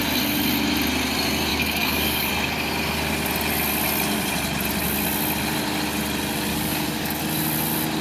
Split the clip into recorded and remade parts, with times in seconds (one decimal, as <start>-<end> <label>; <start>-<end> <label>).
0.0-1.5 recorded; 1.5-2.3 remade; 2.3-6.5 recorded; 6.5-7.2 remade; 7.2-8.0 recorded

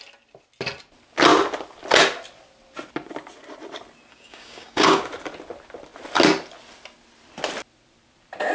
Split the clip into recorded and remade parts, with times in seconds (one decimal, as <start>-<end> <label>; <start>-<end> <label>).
0.0-4.1 recorded; 4.1-5.0 remade; 5.0-8.5 recorded

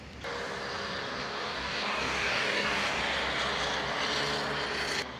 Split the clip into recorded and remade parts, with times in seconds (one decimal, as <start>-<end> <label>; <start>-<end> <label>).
0.0-1.2 recorded; 1.2-3.0 remade; 3.0-5.2 recorded

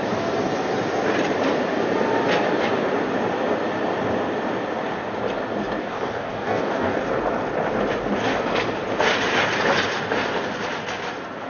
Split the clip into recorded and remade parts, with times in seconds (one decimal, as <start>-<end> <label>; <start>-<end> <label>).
0.0-5.8 recorded; 5.8-7.0 remade; 7.0-11.5 recorded

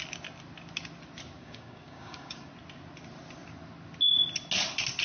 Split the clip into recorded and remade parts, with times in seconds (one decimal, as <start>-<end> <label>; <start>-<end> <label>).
0.0-1.4 recorded; 1.4-2.5 remade; 2.5-5.0 recorded